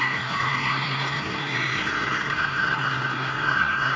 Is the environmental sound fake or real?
fake